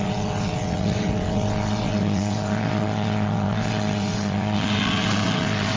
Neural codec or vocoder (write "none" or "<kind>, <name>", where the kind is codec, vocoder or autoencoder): vocoder, WaveNeXt